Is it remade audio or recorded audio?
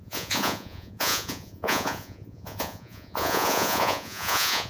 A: remade